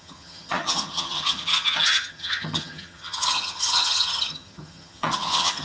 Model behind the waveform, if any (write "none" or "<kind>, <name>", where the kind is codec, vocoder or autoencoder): vocoder, HiFi-GAN